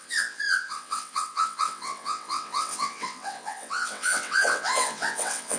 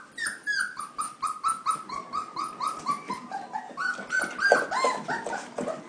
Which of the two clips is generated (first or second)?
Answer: first